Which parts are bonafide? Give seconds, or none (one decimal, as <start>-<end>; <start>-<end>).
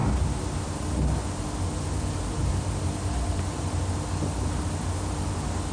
0.0-5.7